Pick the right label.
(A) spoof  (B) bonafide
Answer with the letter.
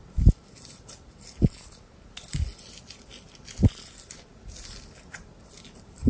B